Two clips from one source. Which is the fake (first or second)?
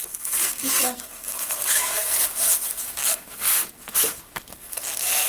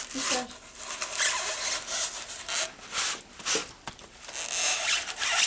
first